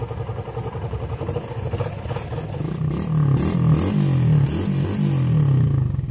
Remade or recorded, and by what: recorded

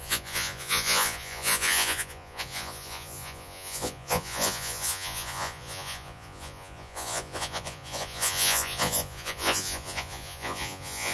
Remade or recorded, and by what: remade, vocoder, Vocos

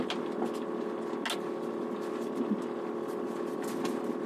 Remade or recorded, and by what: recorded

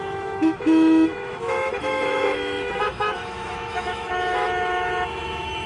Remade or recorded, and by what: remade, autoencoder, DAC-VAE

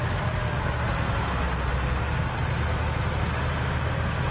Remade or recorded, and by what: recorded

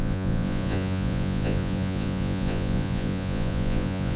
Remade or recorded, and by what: remade, vocoder, Vocos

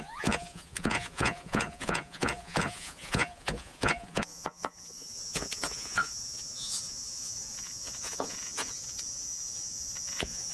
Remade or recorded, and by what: remade, vocoder, Vocos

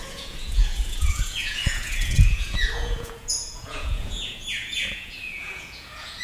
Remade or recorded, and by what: remade, vocoder, Vocos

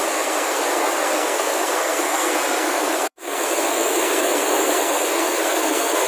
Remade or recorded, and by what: remade, codec, SNAC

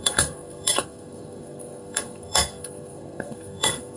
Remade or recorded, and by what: remade, codec, SNAC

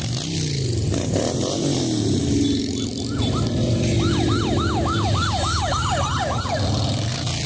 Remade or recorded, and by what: recorded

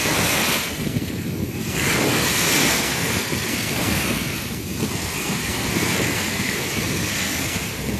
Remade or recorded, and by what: remade, codec, SNAC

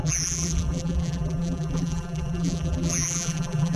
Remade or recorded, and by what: remade, vocoder, BigVGAN v2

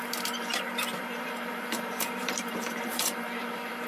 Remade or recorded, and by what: remade, vocoder, BigVGAN v2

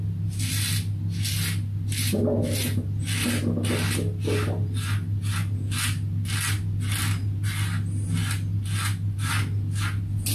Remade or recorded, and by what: recorded